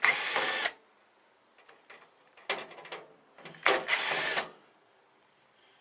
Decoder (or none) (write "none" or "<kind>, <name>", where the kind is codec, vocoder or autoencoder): none